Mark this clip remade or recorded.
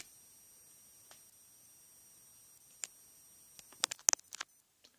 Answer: recorded